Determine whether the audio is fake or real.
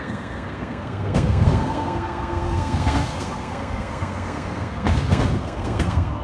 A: fake